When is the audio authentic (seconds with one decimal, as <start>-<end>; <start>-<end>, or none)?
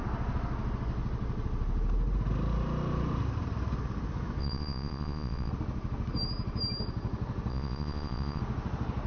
0.0-4.4; 5.5-7.5; 8.4-9.1